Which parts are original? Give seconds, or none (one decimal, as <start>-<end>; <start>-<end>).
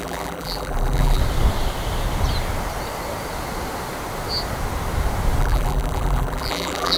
1.2-5.4